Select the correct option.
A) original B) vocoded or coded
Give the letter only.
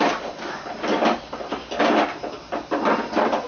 A